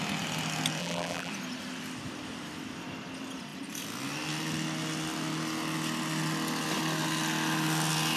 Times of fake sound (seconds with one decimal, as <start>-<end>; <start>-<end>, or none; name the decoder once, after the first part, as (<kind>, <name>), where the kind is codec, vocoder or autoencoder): 0.8-1.3 (vocoder, BigVGAN v2)